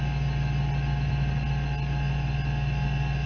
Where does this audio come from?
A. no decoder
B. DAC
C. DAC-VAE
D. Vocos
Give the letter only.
A